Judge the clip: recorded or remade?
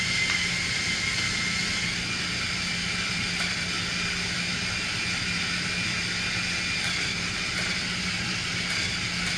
recorded